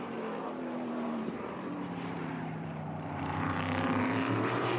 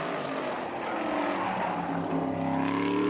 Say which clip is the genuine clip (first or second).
second